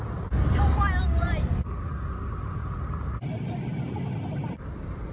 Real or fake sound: real